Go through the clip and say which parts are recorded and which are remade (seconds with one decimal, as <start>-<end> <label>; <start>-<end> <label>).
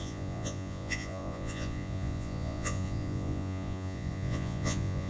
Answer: 0.0-5.1 remade